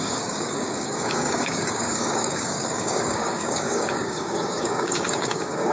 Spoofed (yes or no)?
yes